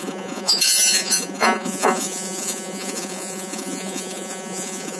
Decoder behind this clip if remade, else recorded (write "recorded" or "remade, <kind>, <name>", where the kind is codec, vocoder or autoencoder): remade, vocoder, Vocos